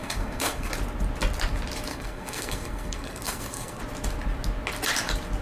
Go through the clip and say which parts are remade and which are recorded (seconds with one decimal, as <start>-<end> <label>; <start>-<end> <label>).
0.0-0.7 remade; 0.7-1.9 recorded; 1.9-3.8 remade; 3.8-5.4 recorded